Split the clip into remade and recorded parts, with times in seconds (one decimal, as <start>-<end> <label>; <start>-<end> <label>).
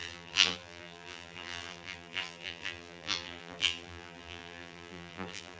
0.0-5.6 remade